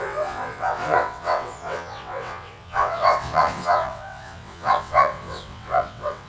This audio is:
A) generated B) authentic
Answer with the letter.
A